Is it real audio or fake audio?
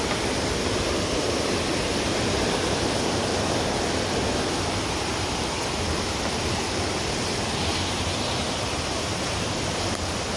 real